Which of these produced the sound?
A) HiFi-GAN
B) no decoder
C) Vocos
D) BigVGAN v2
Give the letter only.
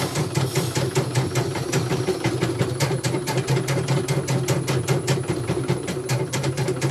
D